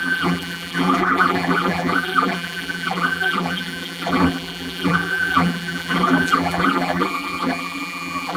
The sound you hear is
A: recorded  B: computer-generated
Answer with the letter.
B